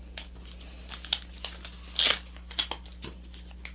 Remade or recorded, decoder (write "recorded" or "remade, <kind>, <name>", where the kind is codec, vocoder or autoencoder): recorded